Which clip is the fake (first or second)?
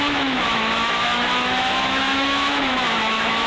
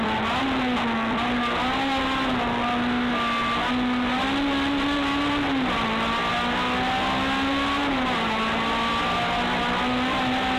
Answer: first